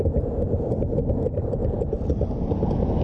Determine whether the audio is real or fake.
real